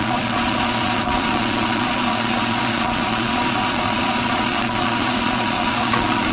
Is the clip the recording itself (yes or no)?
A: no